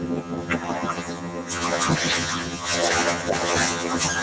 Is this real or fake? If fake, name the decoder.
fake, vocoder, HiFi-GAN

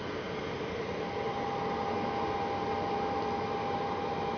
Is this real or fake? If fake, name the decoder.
real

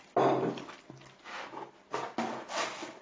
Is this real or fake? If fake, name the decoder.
real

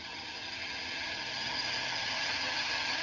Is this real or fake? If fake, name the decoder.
fake, vocoder, HiFi-GAN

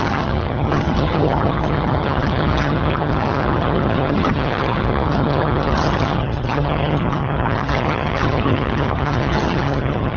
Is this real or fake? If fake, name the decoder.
fake, vocoder, HiFi-GAN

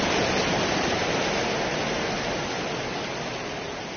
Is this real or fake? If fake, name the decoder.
real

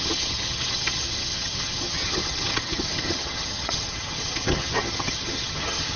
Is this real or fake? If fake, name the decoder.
fake, vocoder, HiFi-GAN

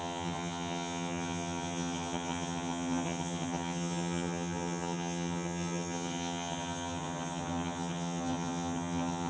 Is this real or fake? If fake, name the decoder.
fake, vocoder, HiFi-GAN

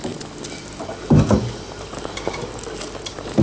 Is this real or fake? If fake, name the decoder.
real